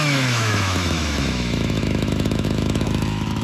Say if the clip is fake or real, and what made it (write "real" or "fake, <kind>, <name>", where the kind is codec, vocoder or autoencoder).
fake, autoencoder, DAC-VAE